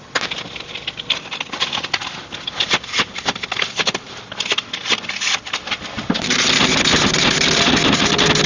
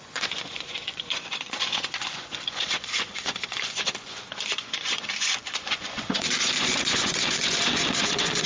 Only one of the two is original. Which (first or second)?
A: first